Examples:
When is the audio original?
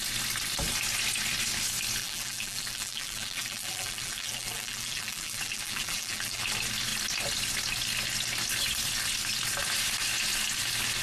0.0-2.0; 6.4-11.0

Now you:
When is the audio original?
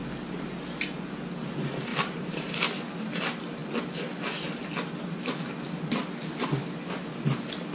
0.0-1.9; 2.5-7.7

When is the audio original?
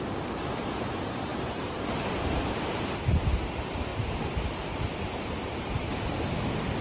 0.0-6.8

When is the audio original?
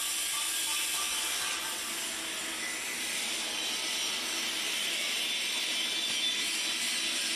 0.7-4.6; 5.7-7.4